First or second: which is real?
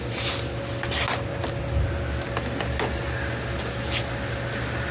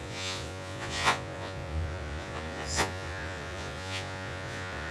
first